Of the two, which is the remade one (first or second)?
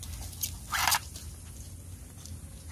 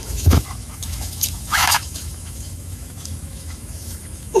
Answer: second